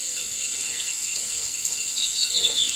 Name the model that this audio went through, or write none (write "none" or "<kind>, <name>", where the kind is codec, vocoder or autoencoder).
codec, SNAC